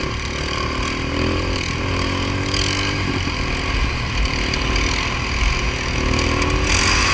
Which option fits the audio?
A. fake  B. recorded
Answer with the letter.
B